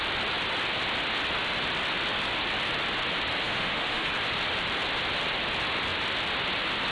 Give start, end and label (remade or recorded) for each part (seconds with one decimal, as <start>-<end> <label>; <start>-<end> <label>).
0.0-3.4 recorded; 3.4-4.1 remade; 4.1-6.9 recorded